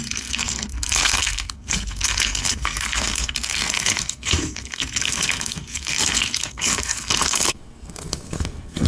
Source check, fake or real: fake